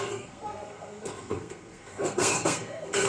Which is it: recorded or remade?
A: remade